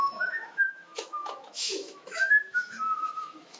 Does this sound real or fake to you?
fake